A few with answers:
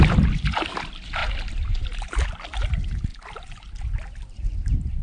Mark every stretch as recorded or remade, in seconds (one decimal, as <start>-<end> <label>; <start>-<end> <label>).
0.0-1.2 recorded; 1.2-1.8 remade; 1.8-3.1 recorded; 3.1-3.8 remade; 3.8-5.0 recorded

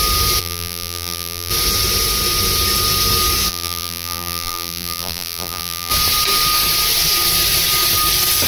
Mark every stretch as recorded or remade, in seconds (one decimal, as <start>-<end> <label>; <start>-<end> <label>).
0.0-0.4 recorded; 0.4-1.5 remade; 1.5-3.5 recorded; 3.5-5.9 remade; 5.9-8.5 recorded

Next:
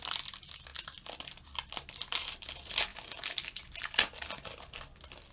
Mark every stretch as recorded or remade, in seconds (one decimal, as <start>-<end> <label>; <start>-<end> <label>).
0.0-5.3 recorded

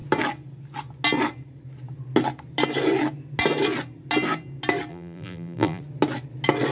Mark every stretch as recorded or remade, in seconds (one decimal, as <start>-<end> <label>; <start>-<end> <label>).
0.0-4.9 recorded; 4.9-5.8 remade; 5.8-6.7 recorded

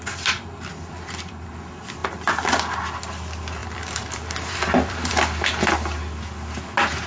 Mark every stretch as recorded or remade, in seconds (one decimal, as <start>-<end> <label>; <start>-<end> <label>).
0.0-2.0 recorded; 2.0-2.8 remade; 2.8-3.6 recorded; 3.6-5.7 remade; 5.7-7.1 recorded

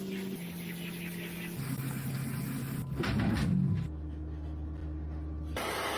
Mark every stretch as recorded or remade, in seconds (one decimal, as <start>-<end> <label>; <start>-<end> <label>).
0.0-6.0 recorded